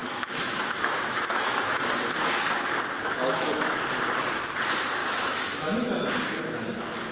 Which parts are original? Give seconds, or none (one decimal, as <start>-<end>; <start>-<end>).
1.8-3.0; 3.8-5.0; 6.1-7.1